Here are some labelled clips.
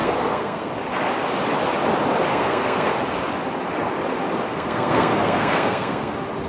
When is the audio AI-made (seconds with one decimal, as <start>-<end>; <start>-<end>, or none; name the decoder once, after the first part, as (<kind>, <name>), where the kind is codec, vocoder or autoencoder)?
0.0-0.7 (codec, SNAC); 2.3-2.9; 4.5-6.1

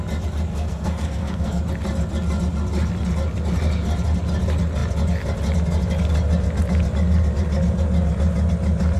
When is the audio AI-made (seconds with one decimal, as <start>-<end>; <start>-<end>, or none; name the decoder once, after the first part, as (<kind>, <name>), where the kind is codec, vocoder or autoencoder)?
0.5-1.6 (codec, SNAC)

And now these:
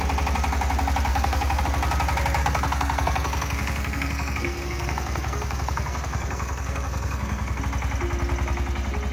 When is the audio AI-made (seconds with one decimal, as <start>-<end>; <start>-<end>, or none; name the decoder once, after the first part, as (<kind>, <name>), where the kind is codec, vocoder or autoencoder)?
1.1-1.6 (codec, SNAC); 2.4-7.6